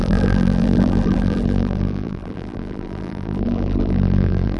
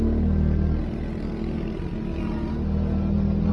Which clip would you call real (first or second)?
second